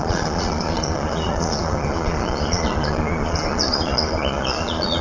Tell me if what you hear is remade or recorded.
remade